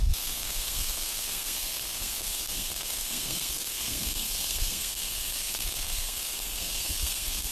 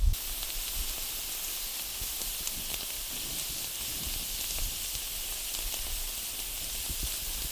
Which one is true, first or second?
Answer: second